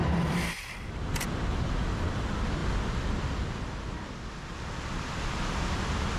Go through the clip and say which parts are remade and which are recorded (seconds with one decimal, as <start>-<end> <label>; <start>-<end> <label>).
0.0-2.6 remade; 2.6-5.5 recorded; 5.5-6.2 remade